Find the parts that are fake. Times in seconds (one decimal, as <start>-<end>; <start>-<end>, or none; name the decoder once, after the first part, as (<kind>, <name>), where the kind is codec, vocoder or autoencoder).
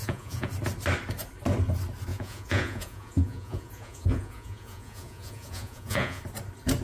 0.0-0.5 (vocoder, Vocos); 2.1-6.2